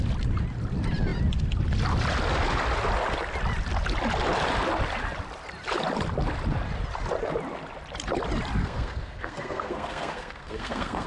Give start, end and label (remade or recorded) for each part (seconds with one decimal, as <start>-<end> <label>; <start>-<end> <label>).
0.0-8.6 recorded; 8.6-11.1 remade